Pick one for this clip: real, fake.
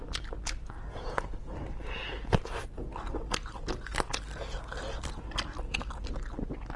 real